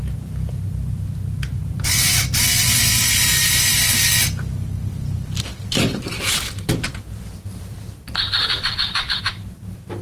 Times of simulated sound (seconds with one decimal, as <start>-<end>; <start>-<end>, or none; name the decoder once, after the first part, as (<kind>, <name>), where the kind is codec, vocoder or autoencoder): 4.9-9.2 (vocoder, BigVGAN v2)